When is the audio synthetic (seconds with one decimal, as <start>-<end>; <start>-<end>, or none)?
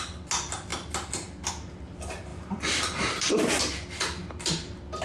2.3-3.6